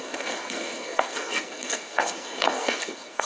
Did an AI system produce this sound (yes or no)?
yes